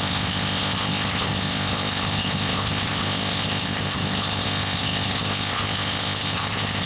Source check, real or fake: fake